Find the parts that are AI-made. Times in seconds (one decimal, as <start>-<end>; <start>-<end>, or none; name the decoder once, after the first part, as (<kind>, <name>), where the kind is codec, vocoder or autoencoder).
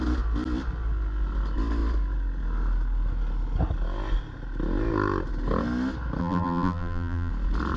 6.2-7.3 (vocoder, BigVGAN v2)